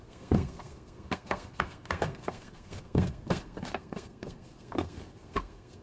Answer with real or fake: fake